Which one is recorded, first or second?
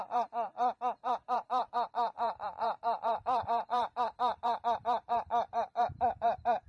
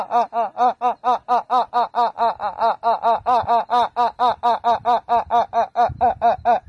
second